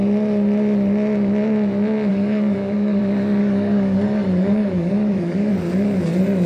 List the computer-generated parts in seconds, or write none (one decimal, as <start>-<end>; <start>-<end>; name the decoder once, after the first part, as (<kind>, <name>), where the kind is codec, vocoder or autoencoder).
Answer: 2.1-3.0 (codec, DAC); 3.4-5.5